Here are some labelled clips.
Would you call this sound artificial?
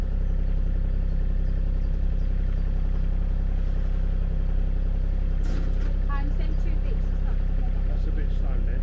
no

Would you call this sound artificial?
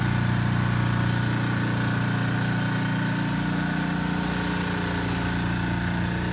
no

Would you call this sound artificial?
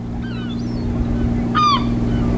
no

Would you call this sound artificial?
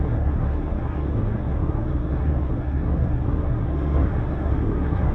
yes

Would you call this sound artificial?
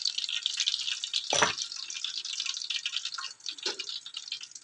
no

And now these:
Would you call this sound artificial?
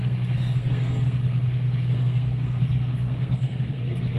yes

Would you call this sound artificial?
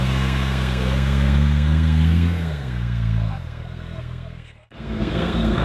yes